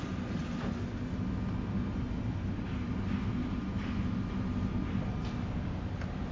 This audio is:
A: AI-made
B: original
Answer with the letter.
B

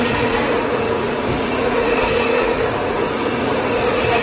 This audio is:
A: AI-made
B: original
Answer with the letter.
A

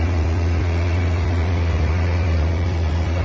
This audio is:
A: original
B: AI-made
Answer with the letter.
B